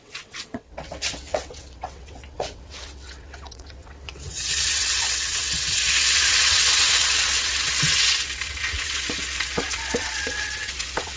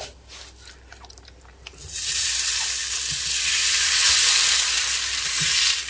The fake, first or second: first